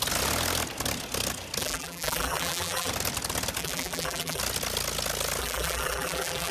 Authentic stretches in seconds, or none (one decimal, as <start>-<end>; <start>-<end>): 0.0-1.6; 2.9-3.6; 4.4-5.4